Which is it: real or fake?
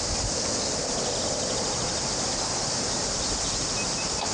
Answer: real